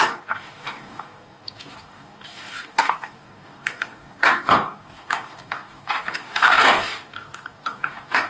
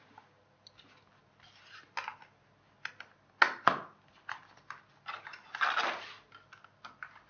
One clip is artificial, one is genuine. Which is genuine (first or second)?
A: second